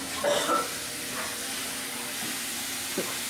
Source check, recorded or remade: recorded